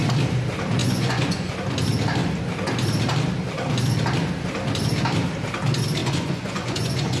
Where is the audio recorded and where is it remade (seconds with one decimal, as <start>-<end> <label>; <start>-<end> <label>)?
0.0-0.8 recorded; 0.8-1.5 remade; 1.5-6.0 recorded; 6.0-7.2 remade